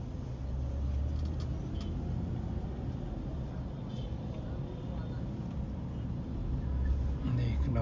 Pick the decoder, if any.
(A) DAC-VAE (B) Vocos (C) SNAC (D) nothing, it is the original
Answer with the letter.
D